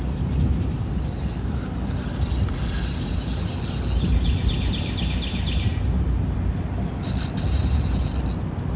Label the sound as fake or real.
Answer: real